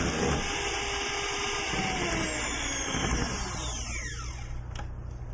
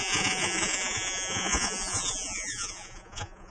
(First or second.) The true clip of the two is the first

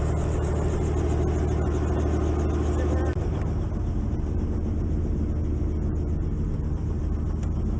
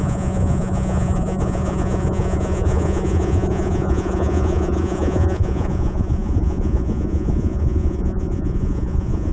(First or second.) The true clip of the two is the first